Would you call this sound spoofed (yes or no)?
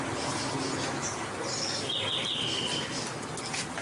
no